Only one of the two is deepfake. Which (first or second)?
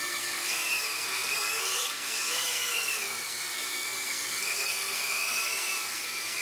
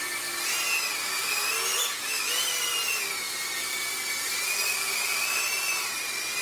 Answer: first